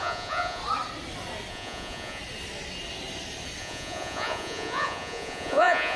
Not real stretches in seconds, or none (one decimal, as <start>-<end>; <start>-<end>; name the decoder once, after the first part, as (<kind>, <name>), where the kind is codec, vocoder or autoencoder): 0.0-0.6 (vocoder, Vocos); 1.5-2.2; 3.6-6.0